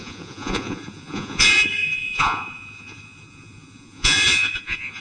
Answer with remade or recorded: remade